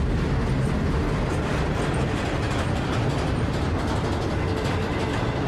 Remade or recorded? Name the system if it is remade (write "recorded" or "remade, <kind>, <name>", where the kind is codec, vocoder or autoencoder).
recorded